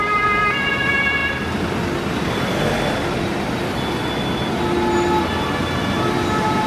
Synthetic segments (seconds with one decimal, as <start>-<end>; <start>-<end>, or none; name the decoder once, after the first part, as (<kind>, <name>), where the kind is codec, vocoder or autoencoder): none